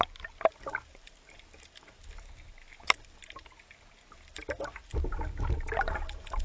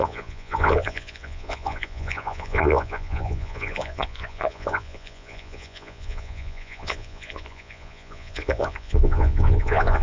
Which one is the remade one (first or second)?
second